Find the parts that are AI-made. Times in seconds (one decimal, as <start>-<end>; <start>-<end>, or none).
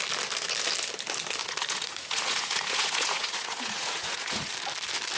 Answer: 1.4-4.5